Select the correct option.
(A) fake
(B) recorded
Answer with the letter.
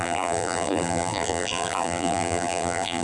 A